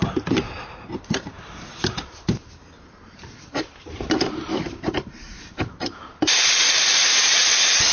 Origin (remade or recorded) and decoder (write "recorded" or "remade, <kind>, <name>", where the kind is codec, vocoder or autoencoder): remade, vocoder, BigVGAN v2